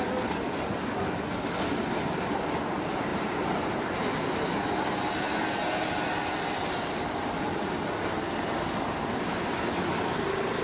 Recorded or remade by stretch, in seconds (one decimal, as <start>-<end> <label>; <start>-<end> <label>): 0.0-3.1 recorded; 3.1-3.7 remade; 3.7-10.6 recorded